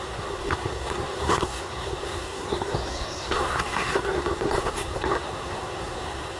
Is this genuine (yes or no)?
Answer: no